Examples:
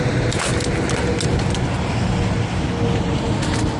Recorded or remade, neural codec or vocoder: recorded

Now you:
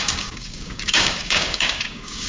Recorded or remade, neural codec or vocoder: remade, codec, DAC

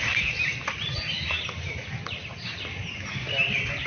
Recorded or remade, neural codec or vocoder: recorded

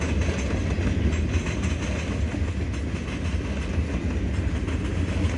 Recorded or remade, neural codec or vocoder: recorded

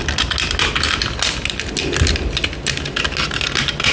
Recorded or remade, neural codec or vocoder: recorded